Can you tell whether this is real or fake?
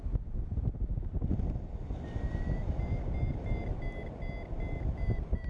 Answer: real